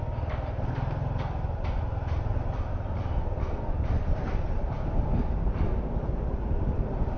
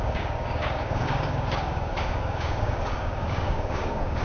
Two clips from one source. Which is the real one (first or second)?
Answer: first